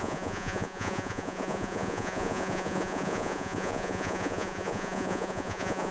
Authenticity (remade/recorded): remade